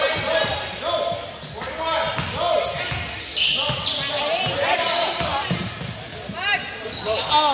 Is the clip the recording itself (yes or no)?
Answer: yes